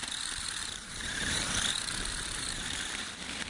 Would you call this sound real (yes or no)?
no